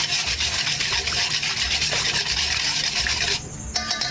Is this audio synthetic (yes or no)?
no